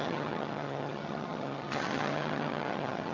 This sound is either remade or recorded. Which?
remade